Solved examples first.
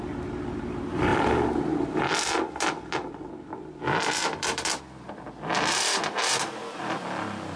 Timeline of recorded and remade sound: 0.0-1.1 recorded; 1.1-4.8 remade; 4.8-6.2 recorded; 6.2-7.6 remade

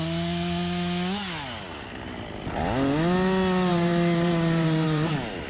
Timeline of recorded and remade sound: 0.0-3.7 recorded; 3.7-5.1 remade; 5.1-5.5 recorded

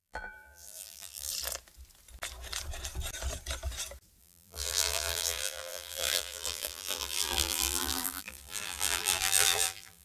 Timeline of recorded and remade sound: 0.0-1.3 remade; 1.3-4.2 recorded; 4.2-10.0 remade

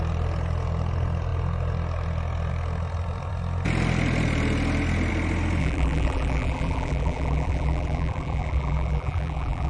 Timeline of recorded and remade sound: 0.0-5.6 recorded; 5.6-9.7 remade

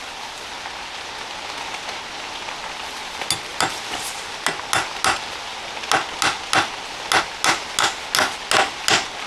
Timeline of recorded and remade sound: 0.0-9.3 recorded

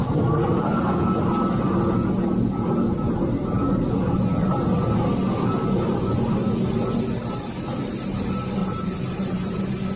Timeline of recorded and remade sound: 0.0-8.6 recorded; 8.6-9.6 remade; 9.6-10.0 recorded

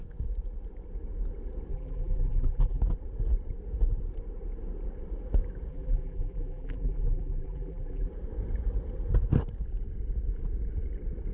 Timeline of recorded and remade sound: 0.0-1.7 recorded; 1.7-2.8 remade; 2.8-5.7 recorded; 5.7-8.1 remade; 8.1-11.3 recorded